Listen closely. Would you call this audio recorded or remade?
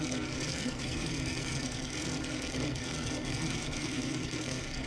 remade